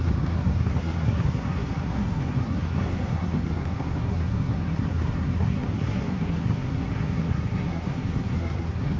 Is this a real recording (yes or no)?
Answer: no